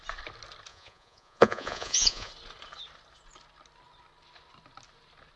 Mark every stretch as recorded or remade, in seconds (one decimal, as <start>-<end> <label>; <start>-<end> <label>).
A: 0.0-0.7 recorded; 0.7-2.3 remade; 2.3-5.4 recorded